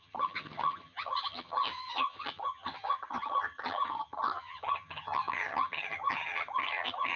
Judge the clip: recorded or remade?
remade